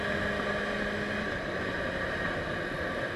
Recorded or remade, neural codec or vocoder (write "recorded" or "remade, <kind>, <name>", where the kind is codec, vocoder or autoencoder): recorded